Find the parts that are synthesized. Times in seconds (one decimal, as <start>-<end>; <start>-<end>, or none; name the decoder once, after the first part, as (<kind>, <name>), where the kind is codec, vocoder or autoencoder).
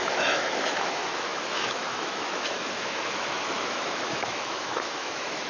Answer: 0.0-5.5 (autoencoder, DAC-VAE)